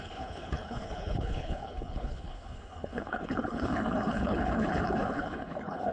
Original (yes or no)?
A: no